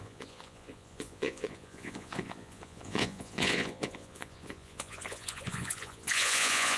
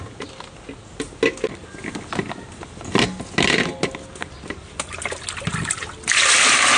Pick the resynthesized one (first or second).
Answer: first